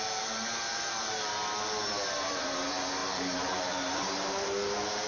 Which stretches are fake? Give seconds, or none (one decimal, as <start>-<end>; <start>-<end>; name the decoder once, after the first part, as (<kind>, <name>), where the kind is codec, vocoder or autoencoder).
0.0-5.1 (vocoder, BigVGAN v2)